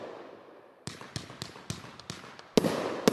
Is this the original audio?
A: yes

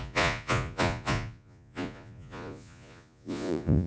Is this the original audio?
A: no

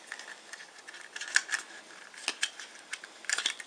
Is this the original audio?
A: yes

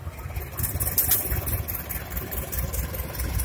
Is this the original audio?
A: yes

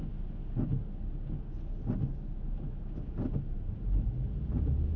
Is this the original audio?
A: yes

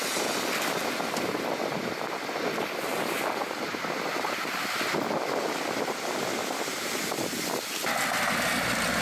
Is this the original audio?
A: yes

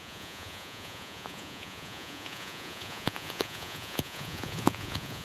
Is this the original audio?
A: no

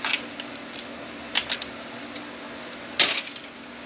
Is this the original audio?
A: yes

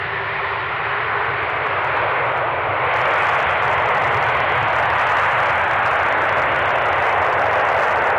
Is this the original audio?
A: yes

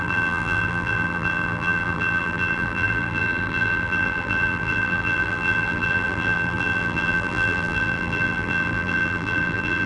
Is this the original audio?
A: no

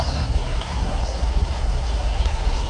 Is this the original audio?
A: no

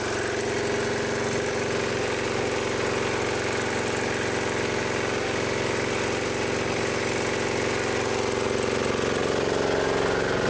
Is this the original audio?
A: yes